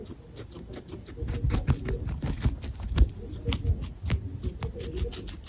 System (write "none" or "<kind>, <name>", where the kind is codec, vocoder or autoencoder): none